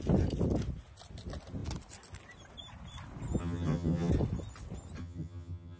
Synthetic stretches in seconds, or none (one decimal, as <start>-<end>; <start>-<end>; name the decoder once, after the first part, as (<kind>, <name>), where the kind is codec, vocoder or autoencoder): 3.4-4.1 (vocoder, HiFi-GAN); 5.0-5.8